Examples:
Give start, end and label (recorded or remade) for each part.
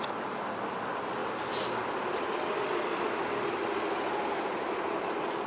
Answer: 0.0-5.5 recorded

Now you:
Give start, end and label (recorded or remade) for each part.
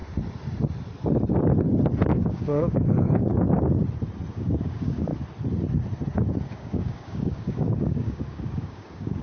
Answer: 0.0-2.1 recorded; 2.1-3.3 remade; 3.3-4.3 recorded; 4.3-5.1 remade; 5.1-6.5 recorded; 6.5-9.2 remade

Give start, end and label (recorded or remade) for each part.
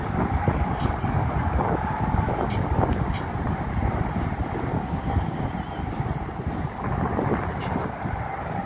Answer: 0.0-4.7 recorded; 4.7-5.5 remade; 5.5-8.7 recorded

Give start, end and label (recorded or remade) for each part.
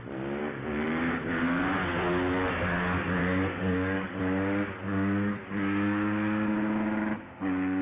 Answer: 0.0-0.4 recorded; 0.4-1.6 remade; 1.6-3.2 recorded; 3.2-4.2 remade; 4.2-7.8 recorded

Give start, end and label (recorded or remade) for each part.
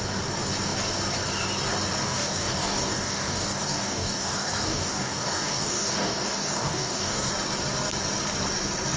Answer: 0.0-2.0 recorded; 2.0-7.3 remade; 7.3-9.0 recorded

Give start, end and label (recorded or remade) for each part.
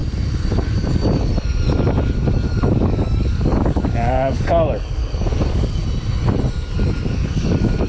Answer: 0.0-2.7 recorded; 2.7-5.8 remade; 5.8-7.1 recorded; 7.1-7.9 remade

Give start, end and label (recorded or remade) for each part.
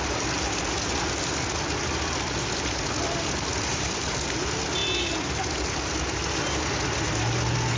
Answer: 0.0-7.8 recorded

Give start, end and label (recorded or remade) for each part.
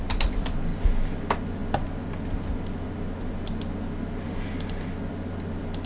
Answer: 0.0-5.9 recorded